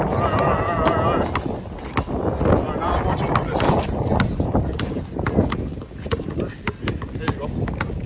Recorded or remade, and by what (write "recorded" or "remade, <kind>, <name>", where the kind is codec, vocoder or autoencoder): recorded